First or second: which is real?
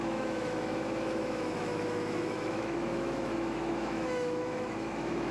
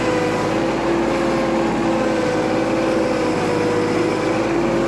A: second